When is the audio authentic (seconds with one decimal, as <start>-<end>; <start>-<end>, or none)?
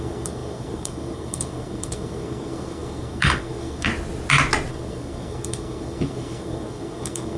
3.9-4.7